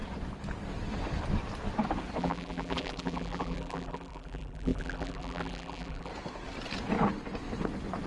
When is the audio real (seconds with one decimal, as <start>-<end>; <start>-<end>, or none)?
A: 0.0-2.2; 6.1-8.1